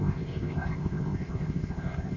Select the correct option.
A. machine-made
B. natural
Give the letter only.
A